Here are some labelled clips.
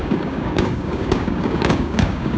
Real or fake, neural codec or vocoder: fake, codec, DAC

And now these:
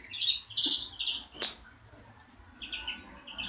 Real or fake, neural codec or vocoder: real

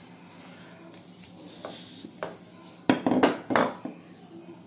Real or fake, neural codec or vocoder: real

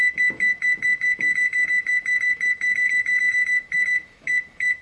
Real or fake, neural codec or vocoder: fake, autoencoder, DAC-VAE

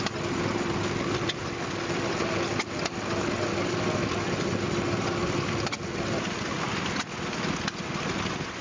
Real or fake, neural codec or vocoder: real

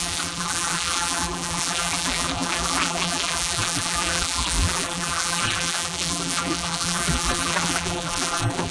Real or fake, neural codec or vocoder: fake, vocoder, BigVGAN v2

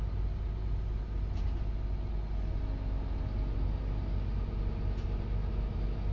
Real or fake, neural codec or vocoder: real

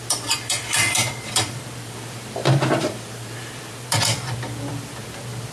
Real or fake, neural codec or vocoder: fake, vocoder, BigVGAN v2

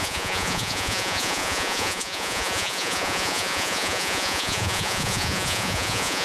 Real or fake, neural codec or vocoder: fake, vocoder, Vocos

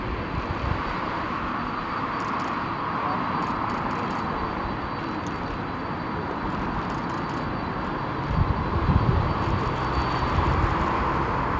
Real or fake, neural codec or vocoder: real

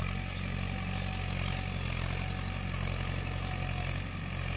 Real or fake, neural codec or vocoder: real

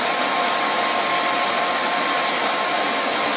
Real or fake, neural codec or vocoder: fake, vocoder, BigVGAN v2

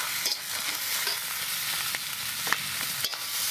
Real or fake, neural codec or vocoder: real